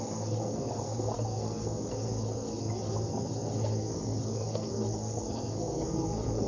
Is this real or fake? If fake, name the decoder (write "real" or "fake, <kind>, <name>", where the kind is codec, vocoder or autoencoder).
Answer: fake, codec, SNAC